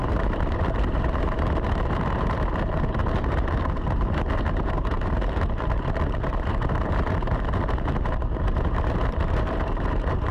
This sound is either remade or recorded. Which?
remade